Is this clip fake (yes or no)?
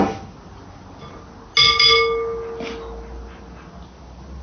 no